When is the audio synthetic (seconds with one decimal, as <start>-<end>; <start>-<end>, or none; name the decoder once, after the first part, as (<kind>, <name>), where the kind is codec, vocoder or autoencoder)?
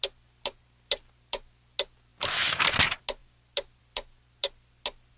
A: none